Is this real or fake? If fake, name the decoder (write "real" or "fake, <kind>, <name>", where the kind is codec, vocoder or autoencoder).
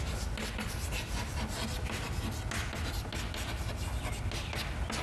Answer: real